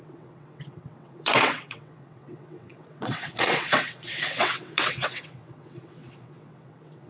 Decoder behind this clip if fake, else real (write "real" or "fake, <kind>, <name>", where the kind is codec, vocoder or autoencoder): fake, vocoder, WaveNeXt